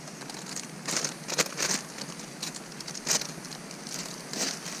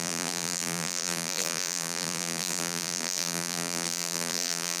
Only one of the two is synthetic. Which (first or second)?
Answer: second